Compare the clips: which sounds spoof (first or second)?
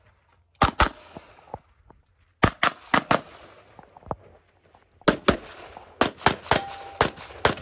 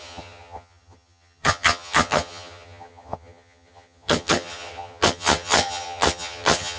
second